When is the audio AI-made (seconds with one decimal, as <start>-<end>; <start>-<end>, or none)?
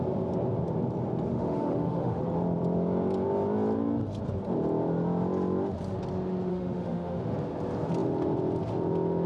1.3-2.2; 6.5-7.2